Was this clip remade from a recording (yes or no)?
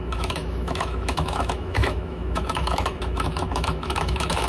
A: yes